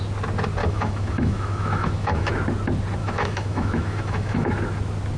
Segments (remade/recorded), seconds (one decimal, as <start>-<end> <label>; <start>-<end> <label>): 0.0-0.6 recorded; 0.6-2.3 remade; 2.3-3.0 recorded; 3.0-4.5 remade; 4.5-5.2 recorded